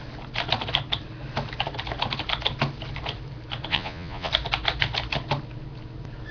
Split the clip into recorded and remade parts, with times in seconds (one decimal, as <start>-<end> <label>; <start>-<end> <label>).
0.0-3.7 recorded; 3.7-4.3 remade; 4.3-6.3 recorded